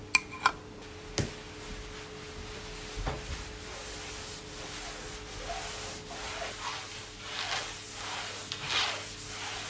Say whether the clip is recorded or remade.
recorded